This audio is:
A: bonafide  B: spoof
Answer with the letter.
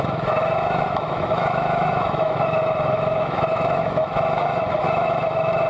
B